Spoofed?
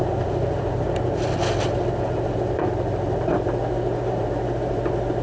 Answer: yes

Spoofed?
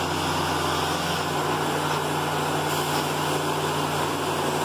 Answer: no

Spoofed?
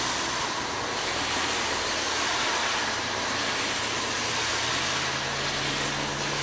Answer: no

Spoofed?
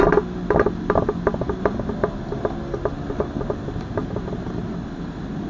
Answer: no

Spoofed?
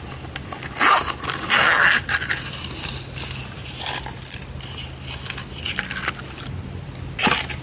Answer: no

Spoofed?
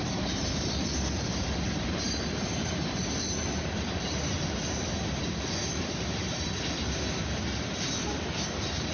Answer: no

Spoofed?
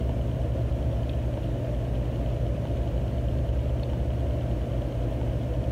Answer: no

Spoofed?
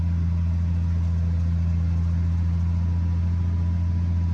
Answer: no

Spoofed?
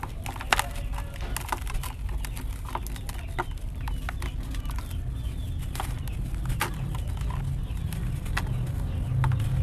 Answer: no